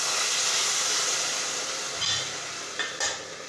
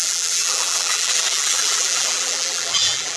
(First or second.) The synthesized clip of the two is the second